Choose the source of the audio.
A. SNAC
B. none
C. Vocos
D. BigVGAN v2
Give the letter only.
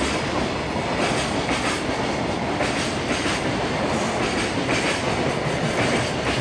B